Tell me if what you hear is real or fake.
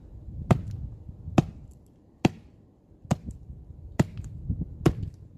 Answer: real